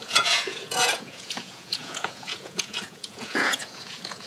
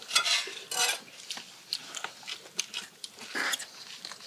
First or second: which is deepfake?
first